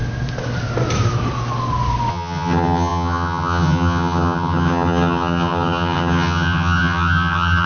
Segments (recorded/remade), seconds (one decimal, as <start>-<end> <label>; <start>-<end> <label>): 0.0-2.1 recorded; 2.1-7.7 remade